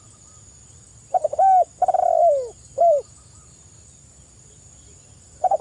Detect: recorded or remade recorded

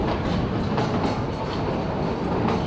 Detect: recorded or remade recorded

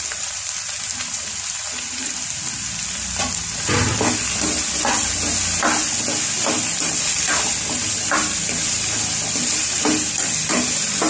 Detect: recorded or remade recorded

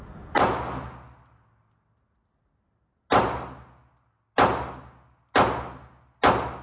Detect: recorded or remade recorded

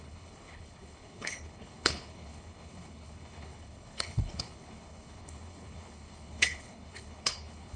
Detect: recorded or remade remade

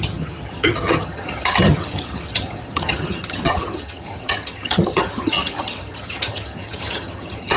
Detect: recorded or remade remade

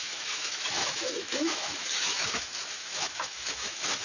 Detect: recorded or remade remade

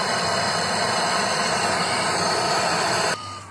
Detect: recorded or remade remade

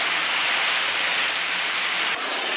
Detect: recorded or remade remade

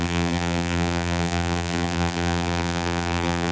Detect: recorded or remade remade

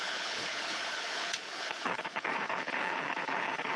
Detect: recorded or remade remade